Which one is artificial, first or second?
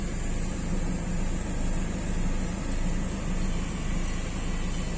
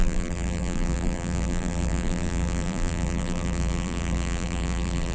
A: second